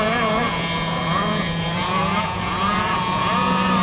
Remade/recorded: remade